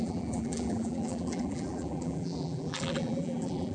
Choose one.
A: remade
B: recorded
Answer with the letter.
A